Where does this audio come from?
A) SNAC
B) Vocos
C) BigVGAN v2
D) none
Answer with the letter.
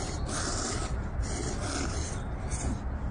D